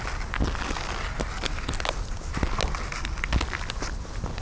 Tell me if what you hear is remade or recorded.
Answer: recorded